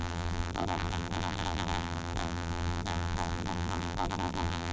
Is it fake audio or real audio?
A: fake